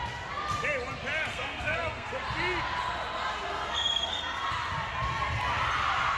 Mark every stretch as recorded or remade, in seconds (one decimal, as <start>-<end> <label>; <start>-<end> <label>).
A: 0.0-1.3 recorded; 1.3-2.1 remade; 2.1-3.5 recorded; 3.5-4.2 remade; 4.2-6.2 recorded